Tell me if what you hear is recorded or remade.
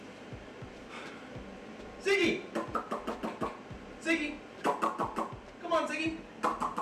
recorded